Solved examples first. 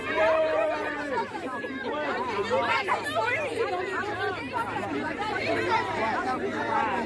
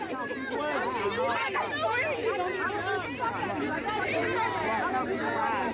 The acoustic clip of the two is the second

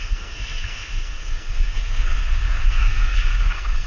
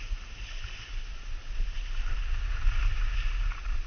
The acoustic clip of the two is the second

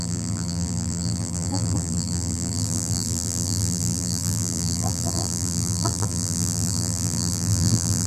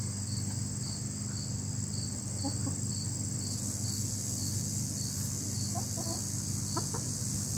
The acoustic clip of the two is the second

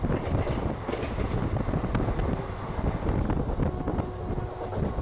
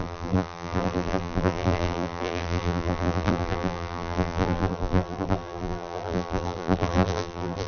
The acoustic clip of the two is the first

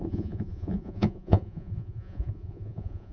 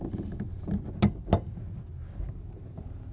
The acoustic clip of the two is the second